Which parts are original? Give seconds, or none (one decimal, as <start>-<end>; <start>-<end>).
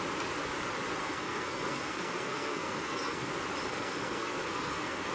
0.0-1.0; 3.3-3.7